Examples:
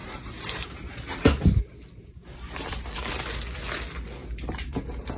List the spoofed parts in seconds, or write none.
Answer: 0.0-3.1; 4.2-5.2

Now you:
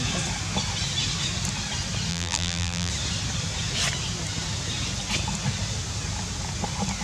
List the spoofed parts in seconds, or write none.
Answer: 2.1-2.9

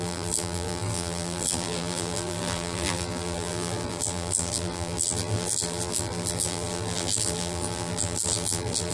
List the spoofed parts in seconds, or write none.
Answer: 0.0-8.9